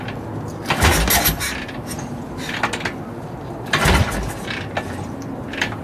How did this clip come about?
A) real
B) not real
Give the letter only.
A